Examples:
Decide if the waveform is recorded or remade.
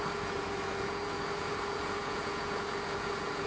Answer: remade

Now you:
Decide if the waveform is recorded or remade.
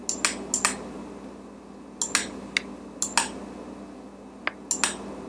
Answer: recorded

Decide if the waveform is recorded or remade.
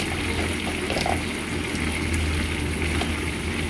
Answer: recorded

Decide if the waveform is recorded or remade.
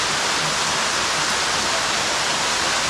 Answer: recorded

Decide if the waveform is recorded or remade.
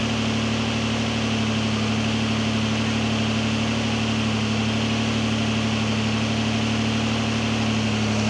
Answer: recorded